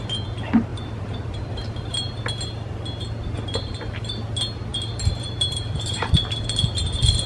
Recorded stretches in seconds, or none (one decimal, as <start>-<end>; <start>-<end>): 0.0-0.7; 2.2-4.7; 6.1-7.3